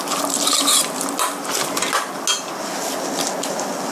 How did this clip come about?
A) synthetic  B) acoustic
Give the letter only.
B